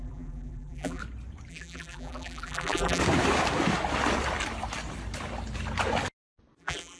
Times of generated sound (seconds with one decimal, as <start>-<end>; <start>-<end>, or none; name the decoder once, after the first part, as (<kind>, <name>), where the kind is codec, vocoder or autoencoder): 0.0-1.0 (vocoder, BigVGAN v2); 1.5-3.0; 6.6-7.0